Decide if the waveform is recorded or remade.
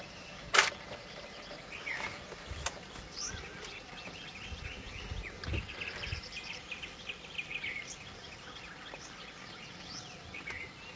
recorded